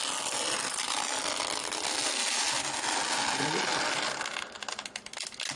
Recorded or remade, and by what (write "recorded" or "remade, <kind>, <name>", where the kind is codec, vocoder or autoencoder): recorded